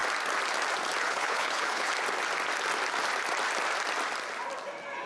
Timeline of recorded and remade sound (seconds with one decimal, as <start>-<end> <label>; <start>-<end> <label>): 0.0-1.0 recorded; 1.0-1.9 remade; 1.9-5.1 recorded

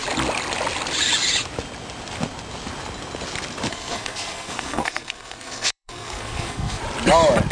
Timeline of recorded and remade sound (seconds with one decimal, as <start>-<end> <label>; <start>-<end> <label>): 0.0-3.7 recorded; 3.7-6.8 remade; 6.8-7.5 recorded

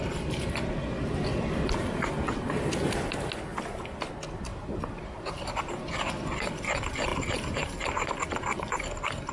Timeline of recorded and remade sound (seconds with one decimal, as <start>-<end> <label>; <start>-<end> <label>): 0.0-3.5 recorded; 3.5-4.1 remade; 4.1-4.5 recorded; 4.5-5.8 remade; 5.8-7.1 recorded; 7.1-8.1 remade; 8.1-9.3 recorded